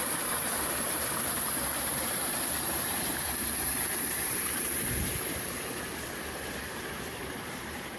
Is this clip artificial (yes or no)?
yes